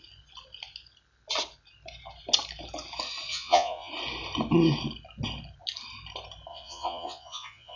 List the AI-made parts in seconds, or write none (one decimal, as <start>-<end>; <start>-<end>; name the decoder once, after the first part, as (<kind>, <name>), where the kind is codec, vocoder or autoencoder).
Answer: 3.3-3.9 (vocoder, Vocos); 6.5-7.8